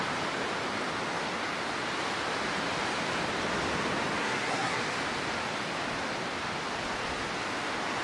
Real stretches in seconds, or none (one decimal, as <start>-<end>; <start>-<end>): 0.0-4.2; 4.8-8.0